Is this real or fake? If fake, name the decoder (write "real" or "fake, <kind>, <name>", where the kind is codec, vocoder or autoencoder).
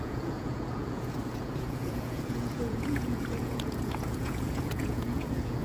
fake, vocoder, Vocos